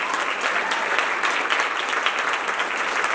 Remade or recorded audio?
recorded